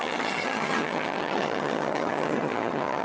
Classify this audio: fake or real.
fake